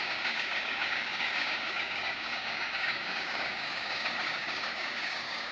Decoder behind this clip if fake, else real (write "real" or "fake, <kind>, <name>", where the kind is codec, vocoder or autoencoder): fake, codec, DAC